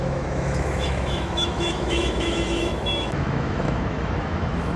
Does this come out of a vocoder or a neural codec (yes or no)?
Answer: yes